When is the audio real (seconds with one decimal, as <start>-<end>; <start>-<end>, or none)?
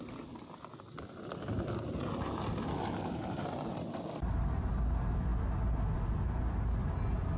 0.0-7.4